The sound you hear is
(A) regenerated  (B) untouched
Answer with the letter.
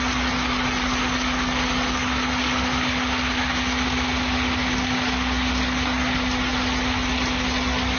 B